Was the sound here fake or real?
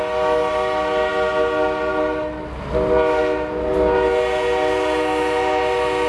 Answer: real